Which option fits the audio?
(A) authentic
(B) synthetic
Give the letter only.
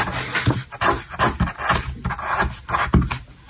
A